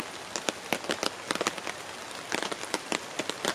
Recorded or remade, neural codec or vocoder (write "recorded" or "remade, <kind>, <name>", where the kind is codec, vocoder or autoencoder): recorded